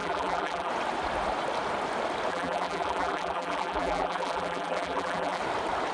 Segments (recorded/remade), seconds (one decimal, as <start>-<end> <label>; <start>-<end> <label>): 0.0-0.7 remade; 0.7-2.3 recorded; 2.3-5.4 remade; 5.4-5.9 recorded